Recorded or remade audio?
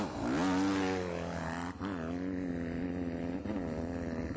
recorded